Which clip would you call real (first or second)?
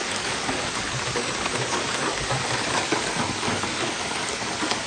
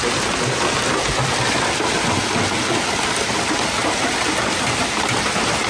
second